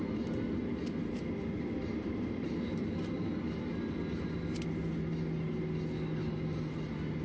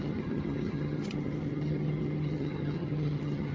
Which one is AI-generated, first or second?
second